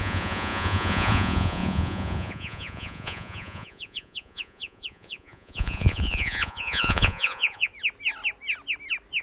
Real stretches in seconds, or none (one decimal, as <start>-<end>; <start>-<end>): 7.7-9.2

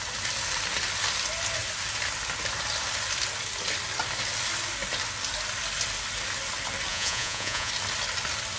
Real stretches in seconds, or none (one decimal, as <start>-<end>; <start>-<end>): 0.0-6.9; 7.7-8.6

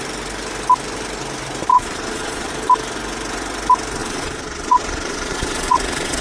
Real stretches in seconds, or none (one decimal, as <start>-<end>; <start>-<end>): 0.0-1.7; 2.5-4.0

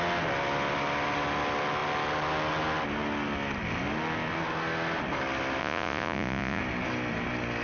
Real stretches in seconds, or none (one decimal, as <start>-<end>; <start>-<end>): 0.0-5.6; 6.6-7.6

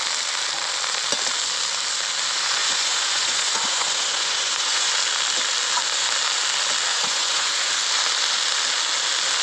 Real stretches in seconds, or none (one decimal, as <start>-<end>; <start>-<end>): 0.0-2.6; 4.9-6.9; 7.7-9.4

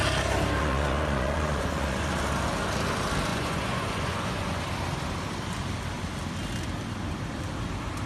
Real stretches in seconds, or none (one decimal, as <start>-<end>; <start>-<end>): 0.0-0.6; 2.1-3.3; 4.6-8.1

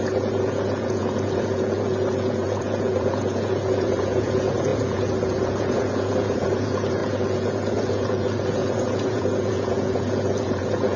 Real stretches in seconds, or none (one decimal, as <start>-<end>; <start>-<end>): none